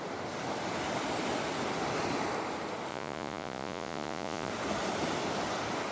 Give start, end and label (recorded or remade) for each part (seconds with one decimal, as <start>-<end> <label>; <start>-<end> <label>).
0.0-2.9 recorded; 2.9-4.5 remade; 4.5-5.9 recorded